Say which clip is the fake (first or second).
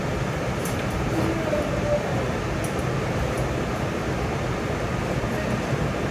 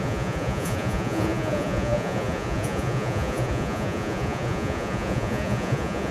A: second